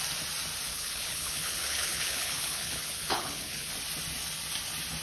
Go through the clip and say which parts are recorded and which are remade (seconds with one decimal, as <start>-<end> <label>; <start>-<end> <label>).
0.0-0.7 recorded; 0.7-3.7 remade; 3.7-5.0 recorded